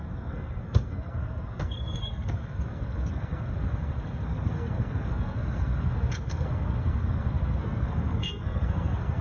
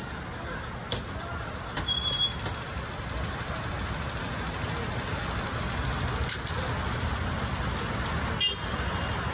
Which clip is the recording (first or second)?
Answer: second